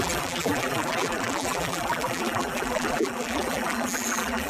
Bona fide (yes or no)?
no